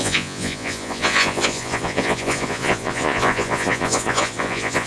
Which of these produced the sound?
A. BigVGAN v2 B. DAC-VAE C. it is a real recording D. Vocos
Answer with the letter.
D